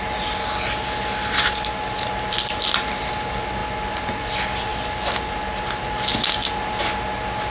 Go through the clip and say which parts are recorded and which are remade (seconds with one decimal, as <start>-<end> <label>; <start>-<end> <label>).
0.0-7.5 recorded

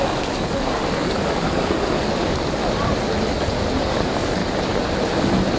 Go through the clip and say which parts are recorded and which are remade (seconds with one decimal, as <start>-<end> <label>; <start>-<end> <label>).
0.0-2.6 remade; 2.6-3.8 recorded; 3.8-4.4 remade; 4.4-5.1 recorded; 5.1-5.6 remade

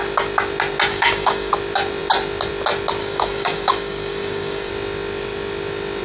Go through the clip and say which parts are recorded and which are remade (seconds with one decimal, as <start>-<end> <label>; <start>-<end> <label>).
0.0-0.9 recorded; 0.9-1.5 remade; 1.5-3.0 recorded; 3.0-4.7 remade; 4.7-6.0 recorded

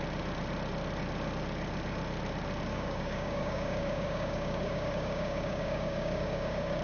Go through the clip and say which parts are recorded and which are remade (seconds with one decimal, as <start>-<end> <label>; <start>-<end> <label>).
0.0-2.7 recorded; 2.7-6.8 remade

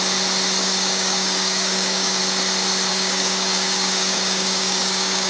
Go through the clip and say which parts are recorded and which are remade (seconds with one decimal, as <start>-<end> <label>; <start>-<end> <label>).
0.0-0.6 recorded; 0.6-2.2 remade; 2.2-2.9 recorded; 2.9-5.3 remade

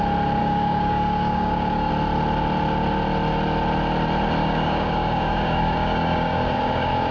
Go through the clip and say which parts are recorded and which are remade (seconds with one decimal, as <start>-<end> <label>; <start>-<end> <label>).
0.0-0.4 recorded; 0.4-1.9 remade; 1.9-4.4 recorded; 4.4-7.1 remade

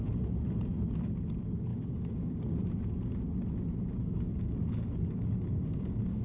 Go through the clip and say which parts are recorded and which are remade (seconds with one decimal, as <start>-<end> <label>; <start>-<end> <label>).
0.0-1.7 recorded; 1.7-2.6 remade; 2.6-4.0 recorded; 4.0-6.2 remade